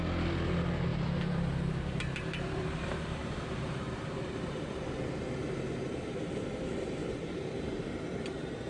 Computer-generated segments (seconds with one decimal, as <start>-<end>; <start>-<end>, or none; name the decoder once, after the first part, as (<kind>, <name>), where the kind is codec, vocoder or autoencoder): 0.9-4.9 (vocoder, BigVGAN v2); 7.0-7.9